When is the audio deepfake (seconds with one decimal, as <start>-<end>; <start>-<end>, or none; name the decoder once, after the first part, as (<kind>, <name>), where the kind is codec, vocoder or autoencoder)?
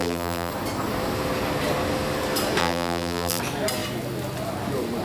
0.0-0.5 (vocoder, BigVGAN v2); 2.6-3.4